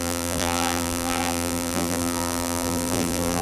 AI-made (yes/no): yes